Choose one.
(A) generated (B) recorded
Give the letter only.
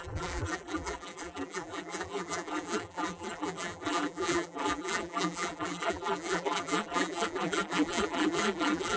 A